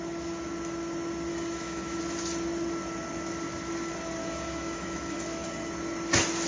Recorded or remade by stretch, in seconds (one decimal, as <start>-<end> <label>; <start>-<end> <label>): 0.0-1.3 recorded; 1.3-2.0 remade; 2.0-4.2 recorded; 4.2-5.7 remade; 5.7-6.5 recorded